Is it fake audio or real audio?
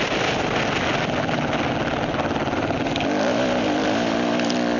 real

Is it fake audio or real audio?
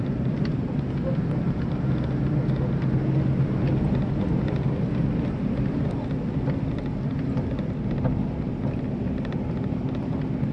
real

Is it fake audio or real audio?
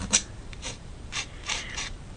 fake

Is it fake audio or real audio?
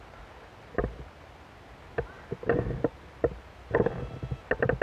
real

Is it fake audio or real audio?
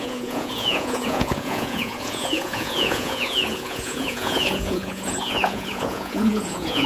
fake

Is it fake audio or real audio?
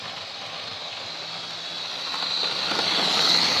real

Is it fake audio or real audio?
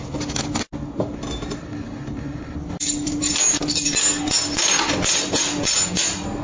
real